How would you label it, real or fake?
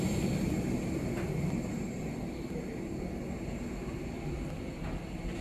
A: real